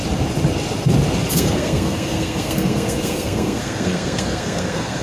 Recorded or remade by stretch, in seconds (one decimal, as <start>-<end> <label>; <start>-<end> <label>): 0.0-1.3 recorded; 1.3-5.0 remade